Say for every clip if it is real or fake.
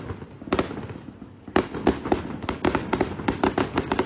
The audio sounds real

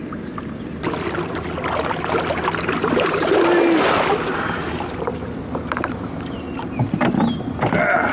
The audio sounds real